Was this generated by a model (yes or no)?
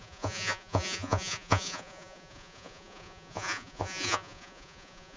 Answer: yes